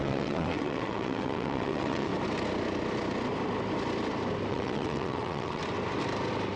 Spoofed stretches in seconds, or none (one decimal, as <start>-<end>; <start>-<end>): 0.0-2.1; 4.5-5.6